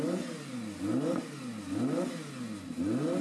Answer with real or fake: real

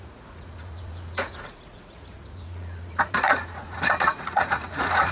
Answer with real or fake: fake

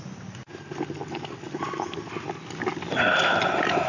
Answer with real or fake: real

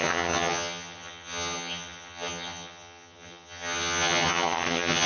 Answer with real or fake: fake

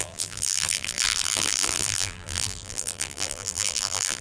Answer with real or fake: fake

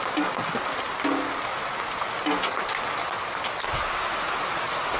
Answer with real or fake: real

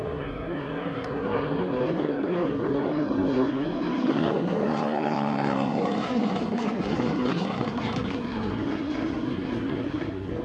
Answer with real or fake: fake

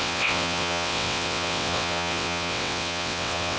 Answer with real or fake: fake